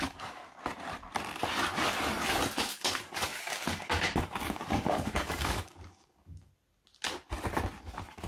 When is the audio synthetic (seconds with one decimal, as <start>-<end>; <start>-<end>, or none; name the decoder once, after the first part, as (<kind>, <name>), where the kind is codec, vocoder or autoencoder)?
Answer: 0.0-0.4 (codec, DAC); 2.6-6.5; 7.8-8.3